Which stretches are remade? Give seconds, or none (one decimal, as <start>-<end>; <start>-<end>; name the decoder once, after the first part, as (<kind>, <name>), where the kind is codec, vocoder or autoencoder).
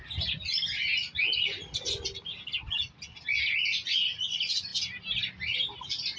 none